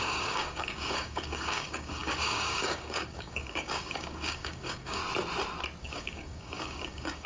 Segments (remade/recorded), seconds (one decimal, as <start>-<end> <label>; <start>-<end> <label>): 0.0-5.0 remade; 5.0-5.8 recorded; 5.8-7.3 remade